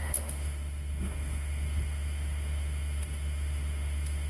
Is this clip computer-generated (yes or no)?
yes